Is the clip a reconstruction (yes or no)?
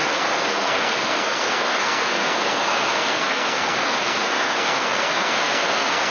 yes